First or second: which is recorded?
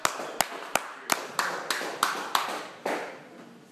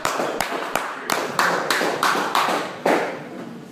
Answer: first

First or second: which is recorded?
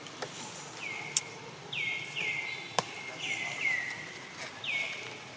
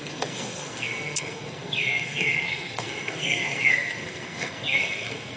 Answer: first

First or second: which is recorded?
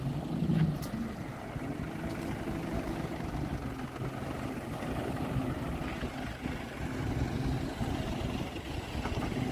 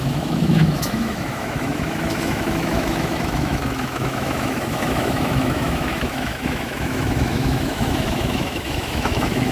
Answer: first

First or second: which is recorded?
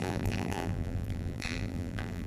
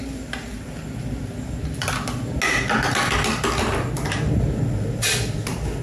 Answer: second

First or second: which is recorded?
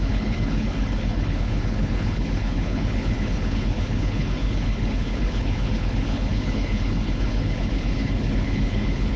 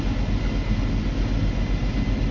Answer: second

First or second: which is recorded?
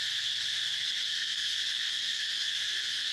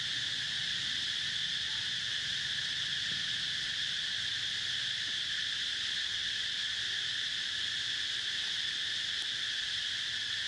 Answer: second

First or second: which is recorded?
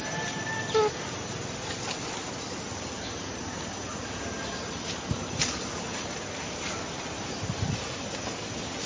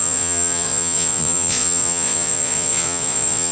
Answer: first